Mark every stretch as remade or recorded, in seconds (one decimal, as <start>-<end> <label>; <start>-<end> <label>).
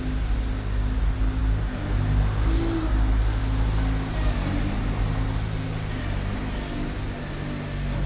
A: 0.0-8.1 recorded